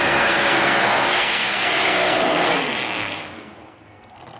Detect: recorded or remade remade